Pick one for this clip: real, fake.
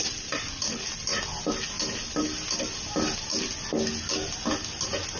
real